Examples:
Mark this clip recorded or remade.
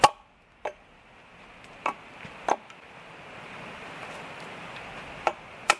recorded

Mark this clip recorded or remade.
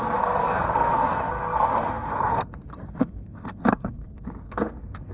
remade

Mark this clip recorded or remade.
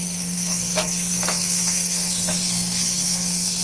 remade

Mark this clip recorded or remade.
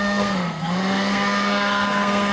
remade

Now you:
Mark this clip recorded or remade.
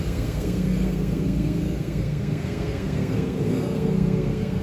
remade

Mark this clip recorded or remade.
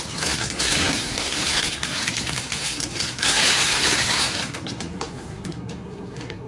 remade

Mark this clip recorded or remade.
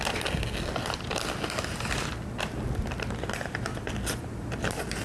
recorded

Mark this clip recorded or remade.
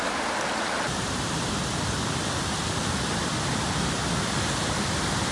recorded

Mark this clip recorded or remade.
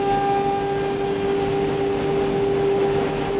recorded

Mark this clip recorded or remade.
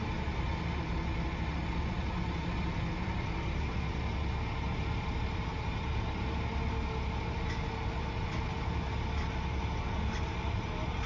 recorded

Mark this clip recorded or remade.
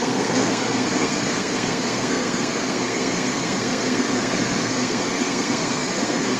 remade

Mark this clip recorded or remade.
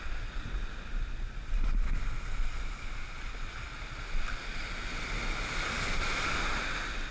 recorded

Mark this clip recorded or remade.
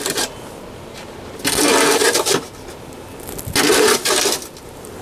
recorded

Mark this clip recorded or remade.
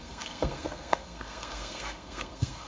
remade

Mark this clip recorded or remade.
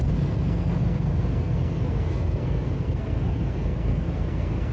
remade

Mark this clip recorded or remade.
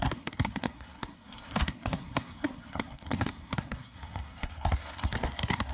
remade